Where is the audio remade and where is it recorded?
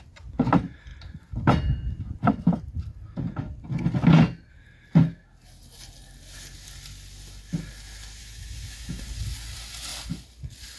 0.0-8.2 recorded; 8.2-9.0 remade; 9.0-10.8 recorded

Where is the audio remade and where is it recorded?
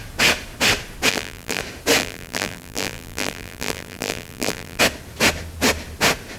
0.0-1.1 recorded; 1.1-1.6 remade; 1.6-2.0 recorded; 2.0-4.8 remade; 4.8-6.4 recorded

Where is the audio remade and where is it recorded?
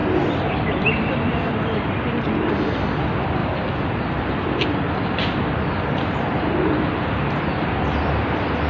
0.0-0.9 remade; 0.9-3.4 recorded; 3.4-3.9 remade; 3.9-8.7 recorded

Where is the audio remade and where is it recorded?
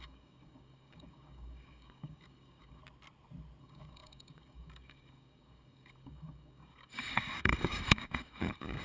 0.0-2.8 remade; 2.8-3.6 recorded; 3.6-8.8 remade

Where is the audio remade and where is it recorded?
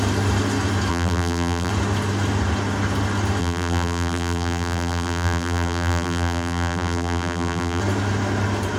0.0-0.9 recorded; 0.9-1.7 remade; 1.7-3.4 recorded; 3.4-7.8 remade; 7.8-8.8 recorded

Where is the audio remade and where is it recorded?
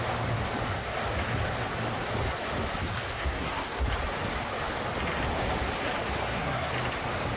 0.0-3.2 recorded; 3.2-3.8 remade; 3.8-6.2 recorded; 6.2-6.7 remade; 6.7-7.4 recorded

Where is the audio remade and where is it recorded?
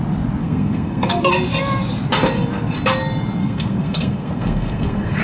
0.0-0.4 recorded; 0.4-1.3 remade; 1.3-3.4 recorded; 3.4-5.2 remade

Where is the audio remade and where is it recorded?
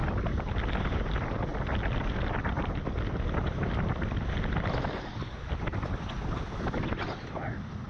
0.0-0.7 recorded; 0.7-1.5 remade; 1.5-6.2 recorded; 6.2-7.9 remade